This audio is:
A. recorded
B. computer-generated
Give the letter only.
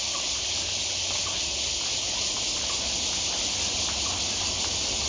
A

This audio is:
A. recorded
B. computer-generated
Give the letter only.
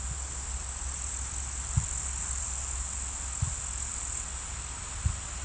A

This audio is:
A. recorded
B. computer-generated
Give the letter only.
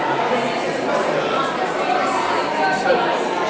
A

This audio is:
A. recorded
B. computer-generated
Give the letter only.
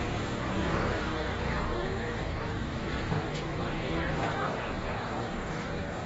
B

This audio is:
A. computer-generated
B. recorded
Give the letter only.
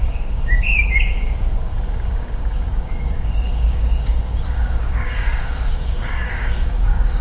A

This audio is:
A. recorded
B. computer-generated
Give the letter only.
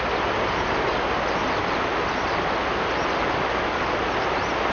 A